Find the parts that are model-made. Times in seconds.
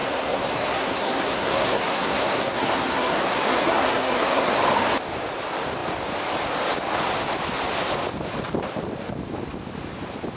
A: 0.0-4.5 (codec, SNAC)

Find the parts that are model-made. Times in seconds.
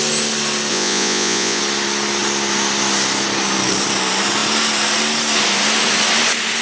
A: 0.7-1.6 (vocoder, Vocos)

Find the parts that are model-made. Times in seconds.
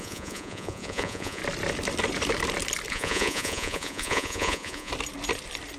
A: 0.0-1.4 (vocoder, Vocos); 2.9-4.9